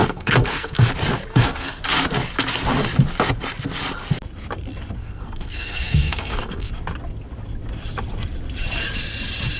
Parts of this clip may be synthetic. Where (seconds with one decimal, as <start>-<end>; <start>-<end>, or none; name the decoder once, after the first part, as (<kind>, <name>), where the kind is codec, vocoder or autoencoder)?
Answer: 0.0-0.9 (codec, SNAC); 1.3-1.8; 5.0-6.7